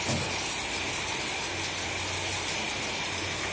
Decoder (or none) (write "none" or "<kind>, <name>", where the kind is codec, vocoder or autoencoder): none